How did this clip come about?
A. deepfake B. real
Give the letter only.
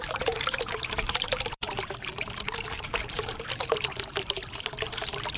A